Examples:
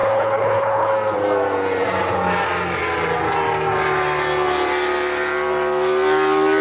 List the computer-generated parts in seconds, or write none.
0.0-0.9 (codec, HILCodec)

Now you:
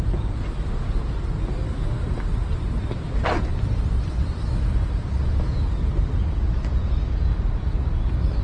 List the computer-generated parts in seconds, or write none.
none

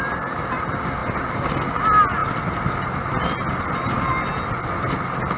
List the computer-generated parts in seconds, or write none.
none